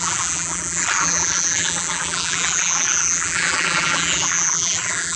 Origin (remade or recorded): remade